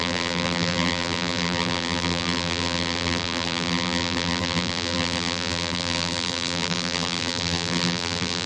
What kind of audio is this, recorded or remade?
remade